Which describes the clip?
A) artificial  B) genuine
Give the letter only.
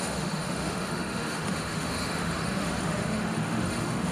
A